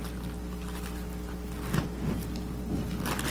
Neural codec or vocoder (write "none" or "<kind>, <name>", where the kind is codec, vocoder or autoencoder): none